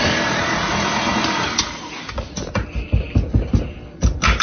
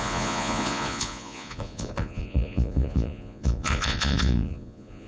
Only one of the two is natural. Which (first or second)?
first